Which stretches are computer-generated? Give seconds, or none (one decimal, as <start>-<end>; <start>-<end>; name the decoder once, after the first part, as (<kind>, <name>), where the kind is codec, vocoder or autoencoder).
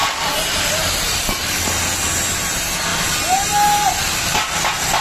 0.0-1.6 (vocoder, BigVGAN v2); 2.9-4.2